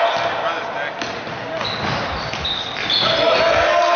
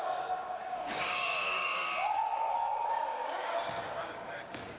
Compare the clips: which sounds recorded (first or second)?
first